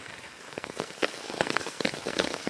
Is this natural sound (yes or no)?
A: no